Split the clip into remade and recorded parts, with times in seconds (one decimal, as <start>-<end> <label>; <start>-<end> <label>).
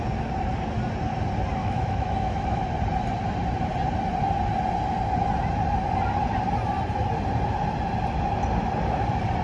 0.0-1.6 recorded; 1.6-2.6 remade; 2.6-9.4 recorded